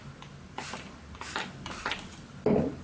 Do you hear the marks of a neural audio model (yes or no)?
no